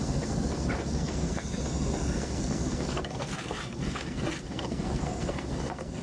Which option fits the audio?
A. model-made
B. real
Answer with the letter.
A